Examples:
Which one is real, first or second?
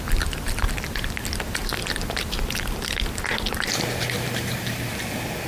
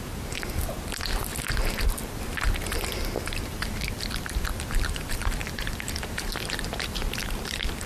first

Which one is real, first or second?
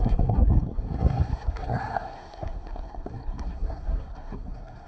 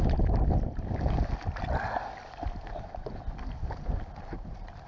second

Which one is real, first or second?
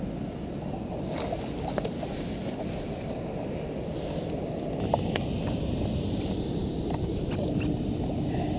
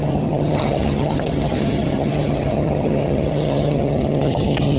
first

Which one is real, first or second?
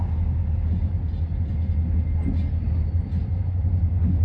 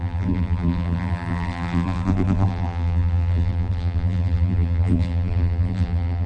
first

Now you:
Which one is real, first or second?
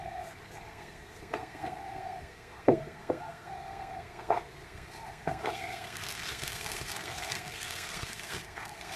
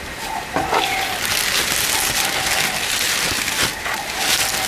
second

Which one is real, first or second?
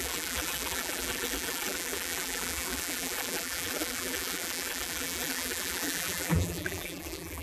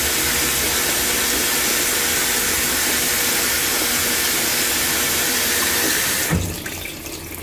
second